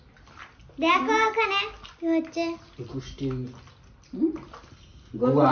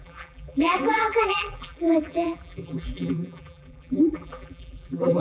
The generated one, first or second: second